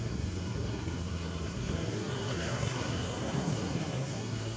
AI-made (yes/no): yes